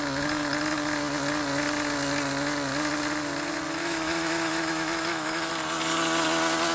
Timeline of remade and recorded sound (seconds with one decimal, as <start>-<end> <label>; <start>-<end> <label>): 0.0-3.8 recorded; 3.8-5.5 remade; 5.5-6.7 recorded